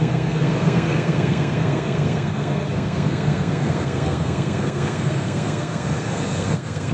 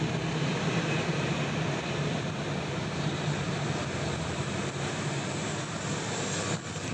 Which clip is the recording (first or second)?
second